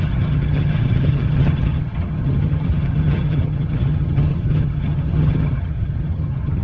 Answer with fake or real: fake